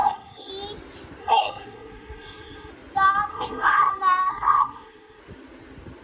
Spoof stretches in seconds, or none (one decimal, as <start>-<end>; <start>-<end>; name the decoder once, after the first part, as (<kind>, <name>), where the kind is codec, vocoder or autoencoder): 0.0-0.5 (codec, SNAC); 1.2-2.7; 3.3-3.9; 4.3-5.2